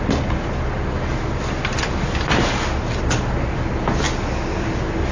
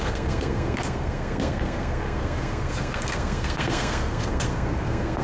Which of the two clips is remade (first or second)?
second